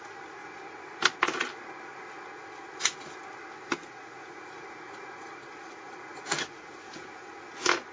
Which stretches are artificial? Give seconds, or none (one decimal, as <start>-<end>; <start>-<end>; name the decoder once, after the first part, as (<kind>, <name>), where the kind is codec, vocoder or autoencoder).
3.8-7.3 (vocoder, Vocos)